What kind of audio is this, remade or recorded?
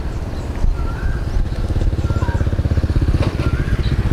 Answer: remade